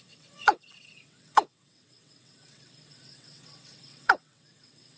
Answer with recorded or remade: remade